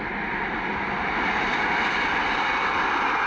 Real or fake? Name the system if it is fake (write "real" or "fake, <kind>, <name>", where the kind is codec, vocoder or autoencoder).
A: real